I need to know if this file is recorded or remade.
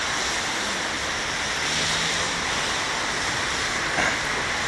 recorded